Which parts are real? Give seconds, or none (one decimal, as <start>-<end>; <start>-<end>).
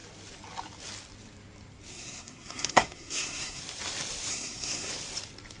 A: 0.0-1.9; 3.6-4.3; 4.9-5.6